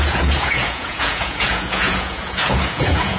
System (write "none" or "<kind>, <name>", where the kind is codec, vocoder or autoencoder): vocoder, Vocos